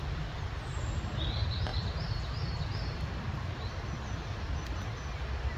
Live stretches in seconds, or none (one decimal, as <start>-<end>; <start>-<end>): 0.0-5.6